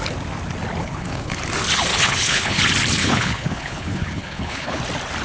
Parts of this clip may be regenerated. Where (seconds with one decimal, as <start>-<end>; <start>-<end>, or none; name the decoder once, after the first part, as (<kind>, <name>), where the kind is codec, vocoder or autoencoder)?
0.8-1.4 (codec, HILCodec); 1.9-2.6; 3.0-4.8